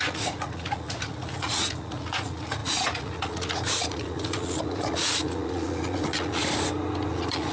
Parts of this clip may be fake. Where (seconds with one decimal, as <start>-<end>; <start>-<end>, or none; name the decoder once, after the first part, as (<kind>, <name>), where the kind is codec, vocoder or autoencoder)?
0.0-6.4 (vocoder, Vocos); 7.1-7.5